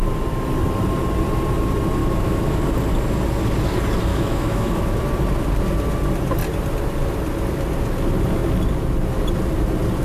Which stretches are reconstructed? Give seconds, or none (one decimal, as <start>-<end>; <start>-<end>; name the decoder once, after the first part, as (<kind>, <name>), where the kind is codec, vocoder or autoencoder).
2.0-2.6 (autoencoder, DAC-VAE); 4.1-4.9